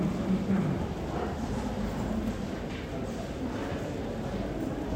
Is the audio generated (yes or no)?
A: no